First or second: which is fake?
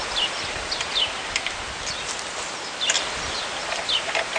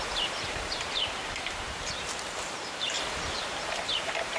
second